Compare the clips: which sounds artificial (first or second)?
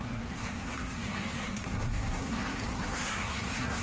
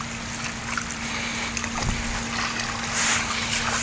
first